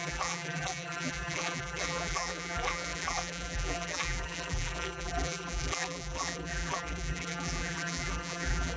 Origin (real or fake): fake